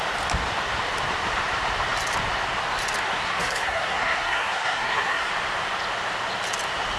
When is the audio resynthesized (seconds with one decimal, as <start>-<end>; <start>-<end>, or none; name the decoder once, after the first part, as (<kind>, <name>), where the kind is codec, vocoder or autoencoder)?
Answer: 3.1-5.3 (codec, SNAC)